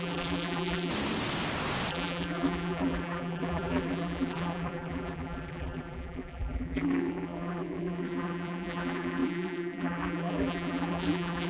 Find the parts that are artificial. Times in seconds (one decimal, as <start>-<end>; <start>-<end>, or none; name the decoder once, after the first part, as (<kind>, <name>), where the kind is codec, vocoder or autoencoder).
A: 0.0-0.9 (vocoder, BigVGAN v2); 1.9-11.5